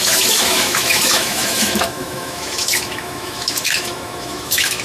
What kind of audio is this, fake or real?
fake